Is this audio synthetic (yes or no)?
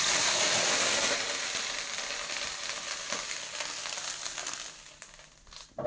no